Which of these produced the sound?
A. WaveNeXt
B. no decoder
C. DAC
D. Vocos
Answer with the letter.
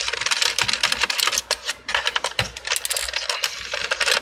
B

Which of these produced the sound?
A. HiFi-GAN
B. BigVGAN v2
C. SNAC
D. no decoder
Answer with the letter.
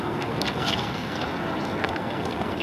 C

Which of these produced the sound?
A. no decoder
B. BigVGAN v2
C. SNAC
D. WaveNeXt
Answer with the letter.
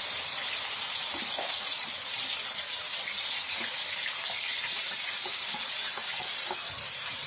B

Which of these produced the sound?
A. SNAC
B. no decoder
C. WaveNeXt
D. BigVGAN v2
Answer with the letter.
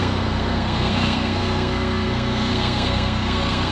A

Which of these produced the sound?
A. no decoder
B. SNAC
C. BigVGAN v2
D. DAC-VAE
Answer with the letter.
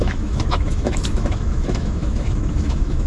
D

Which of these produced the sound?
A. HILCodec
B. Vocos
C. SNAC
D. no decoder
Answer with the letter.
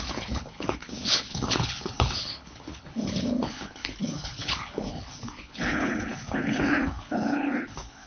A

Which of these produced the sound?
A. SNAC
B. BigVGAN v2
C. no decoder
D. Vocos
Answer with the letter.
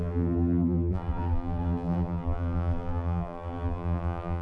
B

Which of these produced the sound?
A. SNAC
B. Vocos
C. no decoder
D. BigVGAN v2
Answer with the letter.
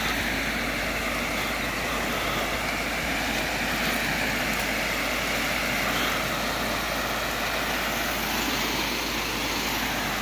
C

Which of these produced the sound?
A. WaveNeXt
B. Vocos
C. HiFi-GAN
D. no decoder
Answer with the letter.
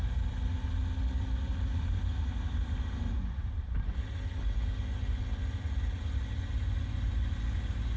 D